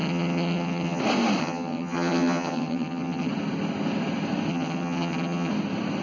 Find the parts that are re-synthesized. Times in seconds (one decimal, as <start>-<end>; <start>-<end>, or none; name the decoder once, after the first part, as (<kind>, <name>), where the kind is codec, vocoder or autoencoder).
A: 0.0-1.0 (vocoder, HiFi-GAN); 1.4-3.3; 4.5-5.5